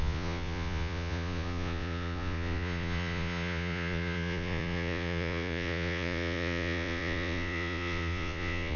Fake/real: fake